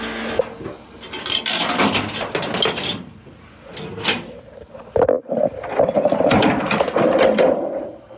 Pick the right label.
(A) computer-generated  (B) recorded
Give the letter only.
B